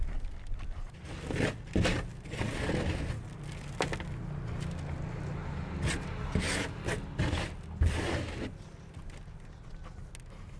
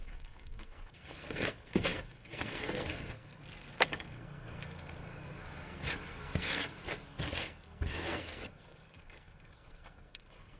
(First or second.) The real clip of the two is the first